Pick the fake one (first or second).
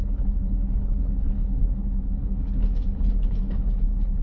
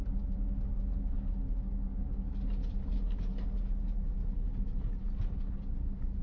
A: first